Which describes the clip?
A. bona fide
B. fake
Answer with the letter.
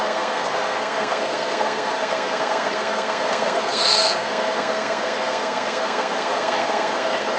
B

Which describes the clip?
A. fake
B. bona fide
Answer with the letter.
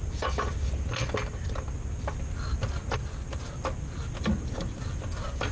B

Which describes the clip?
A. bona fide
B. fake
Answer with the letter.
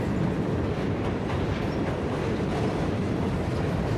A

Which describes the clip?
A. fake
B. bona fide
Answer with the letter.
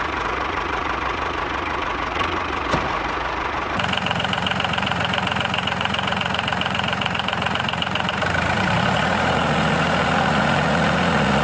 A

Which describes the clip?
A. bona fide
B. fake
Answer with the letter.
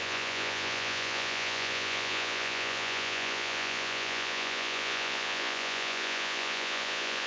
B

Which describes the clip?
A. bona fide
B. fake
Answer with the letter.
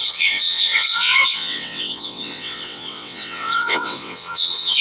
B